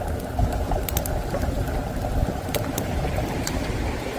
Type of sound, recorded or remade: remade